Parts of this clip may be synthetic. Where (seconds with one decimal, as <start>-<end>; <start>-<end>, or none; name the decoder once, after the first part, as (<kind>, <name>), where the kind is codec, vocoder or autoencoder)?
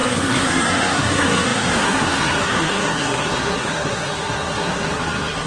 0.0-5.5 (codec, SNAC)